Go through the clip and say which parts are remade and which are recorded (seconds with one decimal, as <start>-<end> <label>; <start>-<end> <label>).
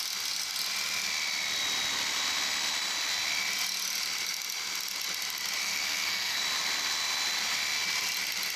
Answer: 0.0-5.6 recorded; 5.6-6.4 remade; 6.4-8.6 recorded